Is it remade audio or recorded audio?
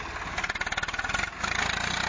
recorded